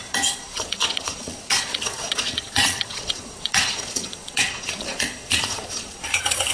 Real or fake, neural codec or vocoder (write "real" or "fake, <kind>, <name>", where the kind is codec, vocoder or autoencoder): fake, vocoder, Vocos